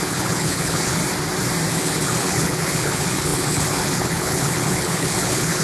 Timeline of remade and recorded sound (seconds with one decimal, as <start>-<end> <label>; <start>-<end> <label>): 0.0-1.0 remade; 1.0-1.7 recorded; 1.7-5.6 remade